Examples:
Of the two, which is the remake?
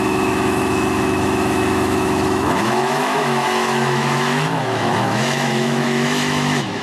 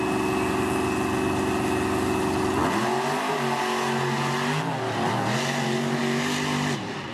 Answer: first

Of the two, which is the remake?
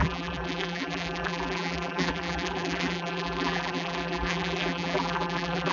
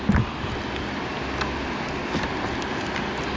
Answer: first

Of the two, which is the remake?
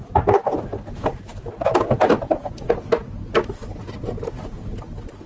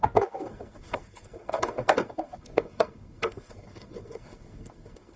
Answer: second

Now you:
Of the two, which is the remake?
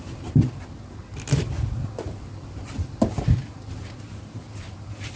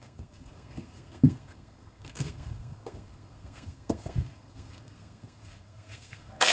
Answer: second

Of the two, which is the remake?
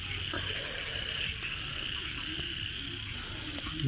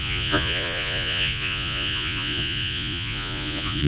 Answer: second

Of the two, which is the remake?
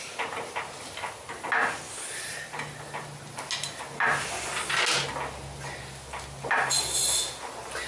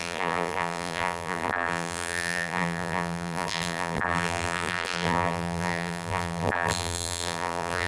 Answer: second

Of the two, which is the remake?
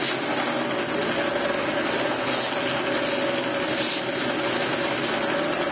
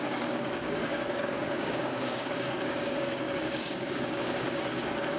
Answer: second